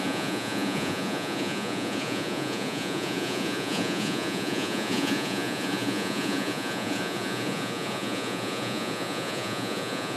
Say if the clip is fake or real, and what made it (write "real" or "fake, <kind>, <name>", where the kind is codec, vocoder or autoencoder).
fake, vocoder, Vocos